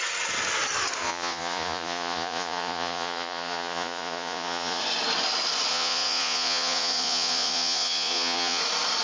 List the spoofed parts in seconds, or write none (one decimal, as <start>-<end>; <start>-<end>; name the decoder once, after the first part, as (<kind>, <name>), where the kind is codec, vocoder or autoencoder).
1.0-4.8 (vocoder, Vocos); 5.7-8.6